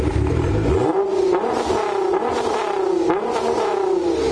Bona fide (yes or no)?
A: yes